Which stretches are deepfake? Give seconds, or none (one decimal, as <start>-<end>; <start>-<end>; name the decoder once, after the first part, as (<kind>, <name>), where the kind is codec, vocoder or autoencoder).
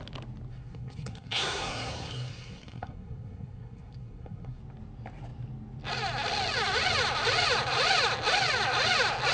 0.5-4.6 (codec, SNAC)